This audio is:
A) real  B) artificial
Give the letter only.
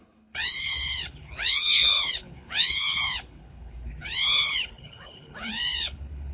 B